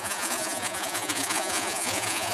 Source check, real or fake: fake